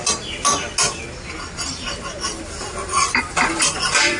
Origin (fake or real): real